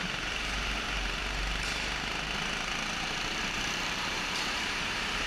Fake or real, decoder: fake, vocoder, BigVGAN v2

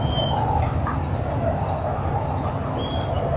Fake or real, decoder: real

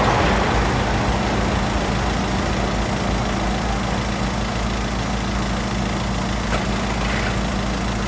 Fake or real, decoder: real